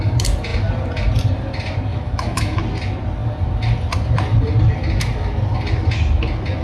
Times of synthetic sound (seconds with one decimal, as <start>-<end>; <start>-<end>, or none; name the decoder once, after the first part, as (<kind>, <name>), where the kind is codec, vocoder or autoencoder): 1.9-2.6 (autoencoder, DAC-VAE)